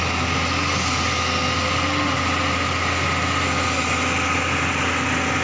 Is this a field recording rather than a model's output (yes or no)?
yes